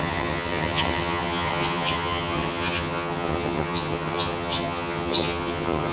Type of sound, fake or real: fake